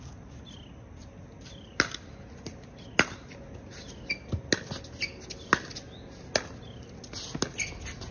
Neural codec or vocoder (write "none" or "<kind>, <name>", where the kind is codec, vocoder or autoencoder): none